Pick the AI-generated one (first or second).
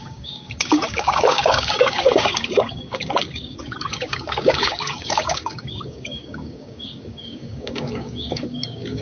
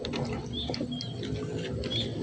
first